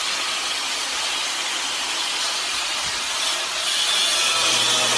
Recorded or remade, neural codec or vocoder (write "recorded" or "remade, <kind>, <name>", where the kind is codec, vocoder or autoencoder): recorded